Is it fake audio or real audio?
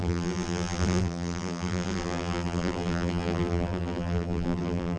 fake